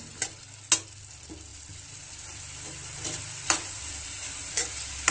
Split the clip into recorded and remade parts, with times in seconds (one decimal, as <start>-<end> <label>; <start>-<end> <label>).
0.0-1.5 recorded; 1.5-4.6 remade; 4.6-5.1 recorded

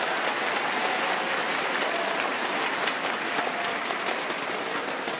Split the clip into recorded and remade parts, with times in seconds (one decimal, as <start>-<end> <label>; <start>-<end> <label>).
0.0-1.5 recorded; 1.5-4.6 remade; 4.6-5.2 recorded

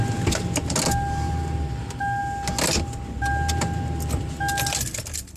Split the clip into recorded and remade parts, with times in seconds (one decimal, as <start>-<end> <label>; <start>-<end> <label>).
0.0-5.4 recorded